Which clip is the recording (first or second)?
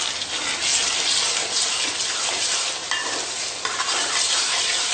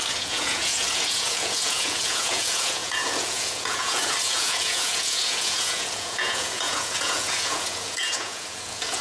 first